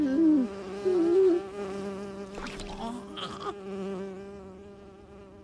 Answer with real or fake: real